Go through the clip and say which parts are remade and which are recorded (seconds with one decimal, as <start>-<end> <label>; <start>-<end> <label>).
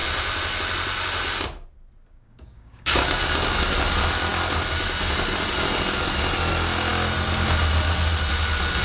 0.0-2.1 recorded; 2.1-3.2 remade; 3.2-8.8 recorded